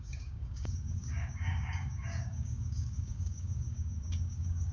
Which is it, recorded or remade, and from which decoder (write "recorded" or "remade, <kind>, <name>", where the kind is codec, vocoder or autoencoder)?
remade, codec, DAC